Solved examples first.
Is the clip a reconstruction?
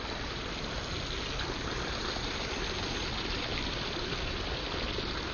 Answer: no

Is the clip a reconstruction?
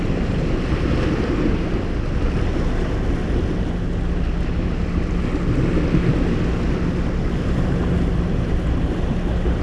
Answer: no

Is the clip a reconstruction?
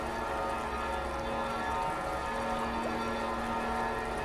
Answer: no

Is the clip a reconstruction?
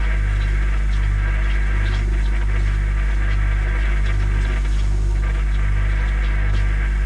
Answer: no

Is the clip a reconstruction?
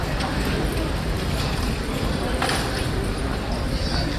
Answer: no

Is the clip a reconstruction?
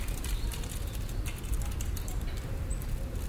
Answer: no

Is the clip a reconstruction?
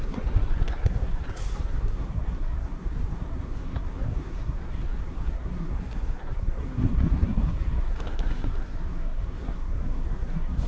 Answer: yes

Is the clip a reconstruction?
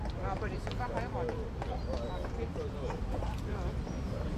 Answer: no